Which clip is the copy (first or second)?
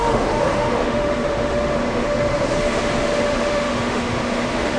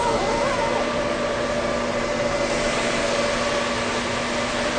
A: first